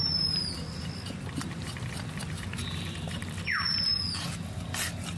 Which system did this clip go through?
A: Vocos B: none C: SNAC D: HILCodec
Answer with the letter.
B